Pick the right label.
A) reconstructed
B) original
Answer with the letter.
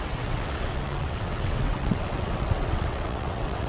A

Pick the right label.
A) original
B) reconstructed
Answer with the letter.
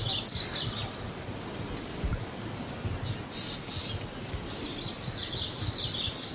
A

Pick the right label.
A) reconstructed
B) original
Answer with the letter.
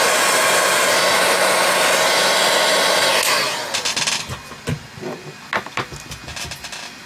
B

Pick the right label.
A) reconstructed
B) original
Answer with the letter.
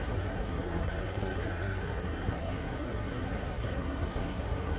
A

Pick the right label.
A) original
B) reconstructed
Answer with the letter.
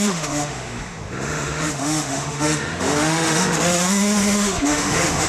B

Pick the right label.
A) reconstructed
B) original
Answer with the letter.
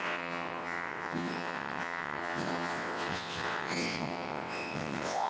A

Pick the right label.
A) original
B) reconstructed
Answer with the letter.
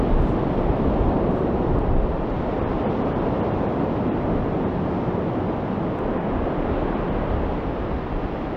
A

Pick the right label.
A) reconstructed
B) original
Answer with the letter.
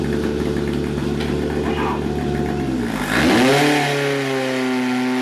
B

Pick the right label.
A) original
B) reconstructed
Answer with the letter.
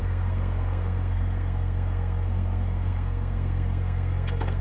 B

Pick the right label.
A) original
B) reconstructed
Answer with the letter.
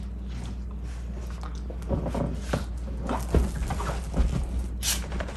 A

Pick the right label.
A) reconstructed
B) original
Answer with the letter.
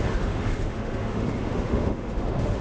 A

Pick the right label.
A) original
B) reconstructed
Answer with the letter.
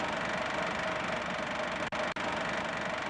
A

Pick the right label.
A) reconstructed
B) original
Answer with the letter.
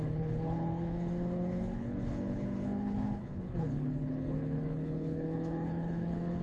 A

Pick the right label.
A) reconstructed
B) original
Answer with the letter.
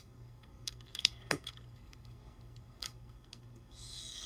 A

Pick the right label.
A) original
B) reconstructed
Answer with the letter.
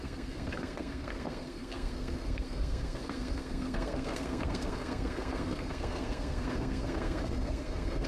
B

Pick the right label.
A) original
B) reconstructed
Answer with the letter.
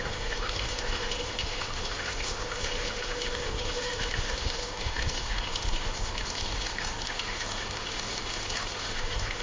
B